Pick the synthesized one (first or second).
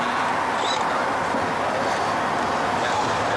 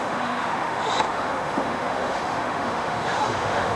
second